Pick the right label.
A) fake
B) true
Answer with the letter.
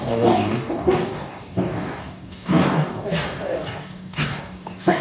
A